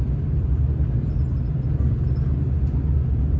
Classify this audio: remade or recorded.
recorded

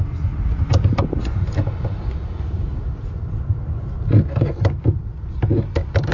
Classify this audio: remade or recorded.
recorded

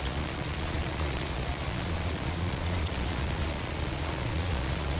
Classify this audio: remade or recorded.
remade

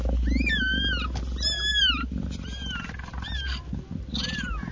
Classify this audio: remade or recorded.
recorded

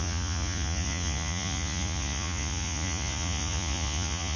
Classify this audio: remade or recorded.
remade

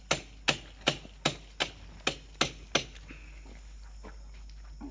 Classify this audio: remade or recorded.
recorded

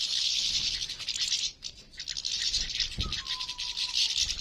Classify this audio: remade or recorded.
recorded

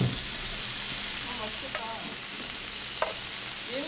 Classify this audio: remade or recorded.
recorded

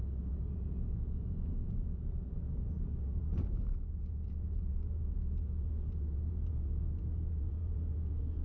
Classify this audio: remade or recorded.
remade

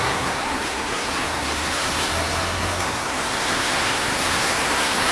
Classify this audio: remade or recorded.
remade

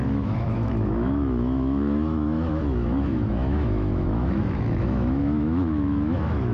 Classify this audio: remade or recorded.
remade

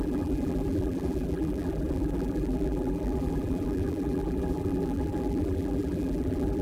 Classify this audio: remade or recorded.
remade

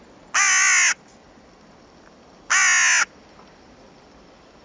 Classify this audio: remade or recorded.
recorded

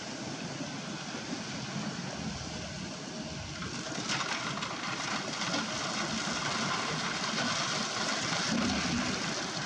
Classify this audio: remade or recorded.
recorded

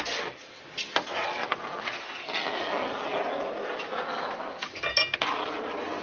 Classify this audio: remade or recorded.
recorded